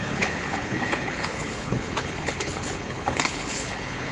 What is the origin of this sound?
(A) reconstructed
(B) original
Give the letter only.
A